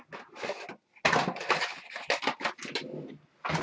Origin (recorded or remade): recorded